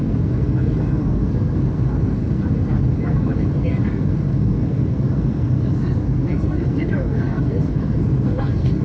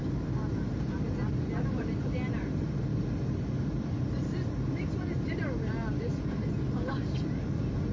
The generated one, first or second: first